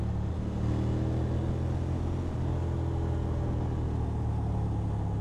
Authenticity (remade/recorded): recorded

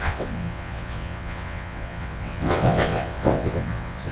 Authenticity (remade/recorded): remade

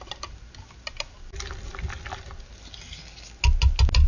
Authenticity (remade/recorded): recorded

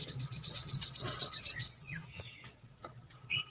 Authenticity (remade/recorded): remade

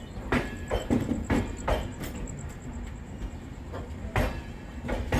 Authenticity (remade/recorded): recorded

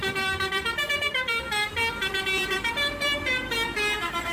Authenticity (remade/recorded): remade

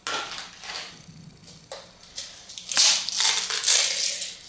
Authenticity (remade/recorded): recorded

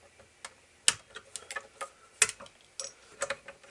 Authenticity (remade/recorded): recorded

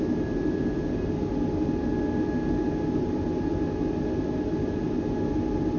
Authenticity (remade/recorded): recorded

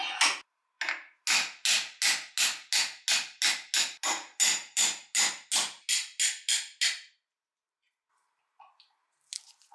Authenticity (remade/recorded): recorded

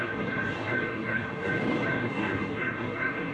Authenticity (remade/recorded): remade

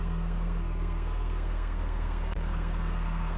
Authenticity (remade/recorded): remade